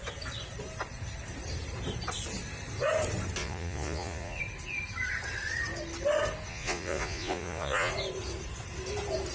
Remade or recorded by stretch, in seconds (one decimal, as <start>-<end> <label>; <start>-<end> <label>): 0.0-3.4 recorded; 3.4-4.4 remade; 4.4-6.5 recorded; 6.5-7.9 remade; 7.9-9.3 recorded

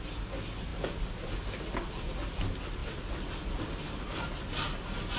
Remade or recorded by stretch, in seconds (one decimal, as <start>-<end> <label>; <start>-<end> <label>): 0.0-5.2 recorded